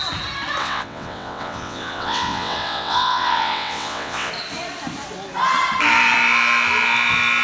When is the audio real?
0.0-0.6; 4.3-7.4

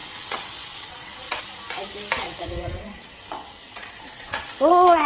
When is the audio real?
1.4-2.2